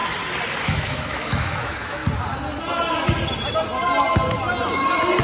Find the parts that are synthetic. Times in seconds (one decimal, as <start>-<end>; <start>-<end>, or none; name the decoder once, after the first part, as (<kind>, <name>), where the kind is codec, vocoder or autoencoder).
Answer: 0.6-2.0 (autoencoder, DAC-VAE)